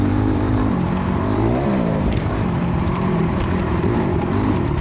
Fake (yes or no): yes